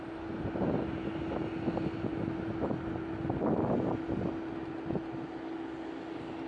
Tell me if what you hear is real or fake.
real